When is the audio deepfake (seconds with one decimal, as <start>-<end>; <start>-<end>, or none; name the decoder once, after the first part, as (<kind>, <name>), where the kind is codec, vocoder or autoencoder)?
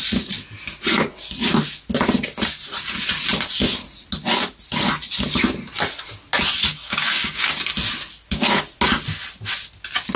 6.7-7.5 (codec, DAC)